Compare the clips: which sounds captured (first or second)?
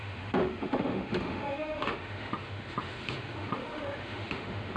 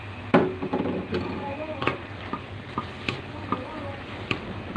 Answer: second